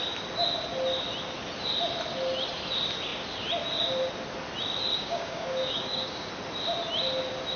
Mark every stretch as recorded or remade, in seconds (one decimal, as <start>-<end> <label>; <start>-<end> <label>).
0.0-4.9 recorded; 4.9-6.3 remade; 6.3-7.6 recorded